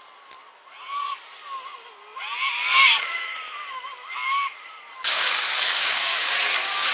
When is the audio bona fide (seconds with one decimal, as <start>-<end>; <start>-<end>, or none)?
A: 0.0-2.5; 6.3-6.9